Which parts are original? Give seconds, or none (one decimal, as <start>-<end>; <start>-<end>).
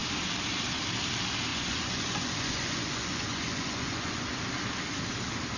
0.0-1.5; 4.4-5.6